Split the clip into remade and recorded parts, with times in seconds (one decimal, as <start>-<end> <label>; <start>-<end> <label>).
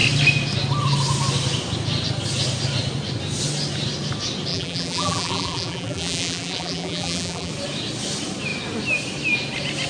0.0-4.5 recorded; 4.5-7.5 remade; 7.5-9.9 recorded